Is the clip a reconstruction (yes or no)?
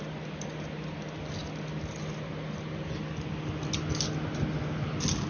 no